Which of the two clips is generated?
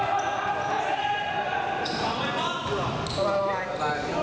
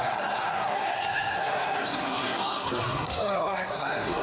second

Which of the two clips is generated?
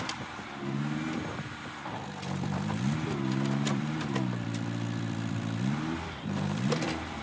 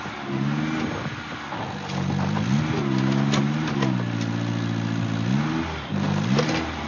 first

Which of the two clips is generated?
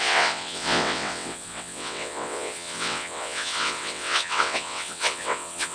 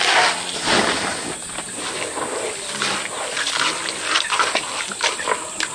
first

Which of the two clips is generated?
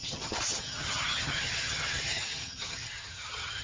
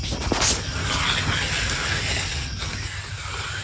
first